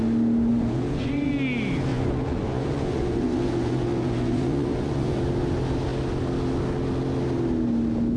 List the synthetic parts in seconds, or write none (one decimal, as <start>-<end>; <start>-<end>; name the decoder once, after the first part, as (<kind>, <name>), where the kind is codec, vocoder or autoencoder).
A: 0.5-1.3 (vocoder, Vocos); 1.9-5.2